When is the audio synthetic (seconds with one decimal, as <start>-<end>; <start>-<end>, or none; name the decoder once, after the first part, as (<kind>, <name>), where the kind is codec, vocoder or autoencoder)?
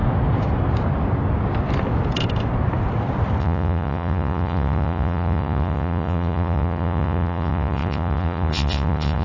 3.4-9.2 (vocoder, Vocos)